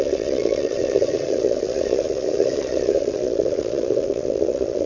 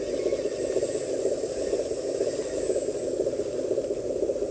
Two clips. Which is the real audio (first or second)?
second